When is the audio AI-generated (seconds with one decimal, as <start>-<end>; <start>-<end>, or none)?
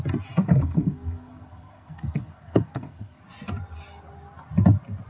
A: 0.4-3.2